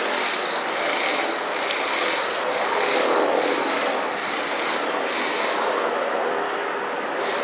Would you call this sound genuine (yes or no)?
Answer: yes